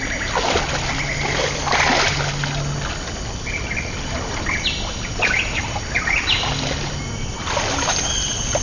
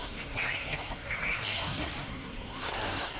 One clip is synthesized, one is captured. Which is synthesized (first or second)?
second